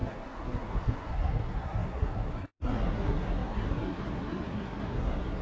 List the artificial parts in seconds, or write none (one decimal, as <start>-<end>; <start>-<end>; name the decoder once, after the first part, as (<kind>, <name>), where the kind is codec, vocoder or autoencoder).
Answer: 0.0-5.4 (codec, SNAC)